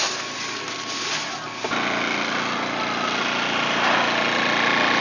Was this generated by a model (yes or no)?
no